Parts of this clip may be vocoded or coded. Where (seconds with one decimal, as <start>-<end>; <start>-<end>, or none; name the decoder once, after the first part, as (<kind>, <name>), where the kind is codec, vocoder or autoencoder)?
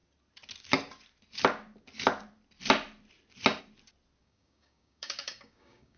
4.2-6.0 (codec, DAC)